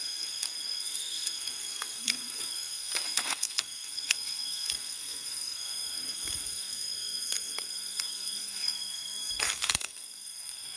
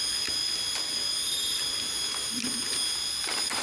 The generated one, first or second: first